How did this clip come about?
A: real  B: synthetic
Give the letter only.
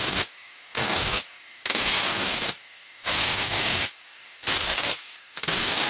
B